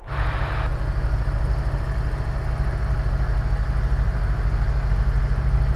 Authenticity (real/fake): real